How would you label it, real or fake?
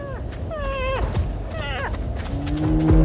real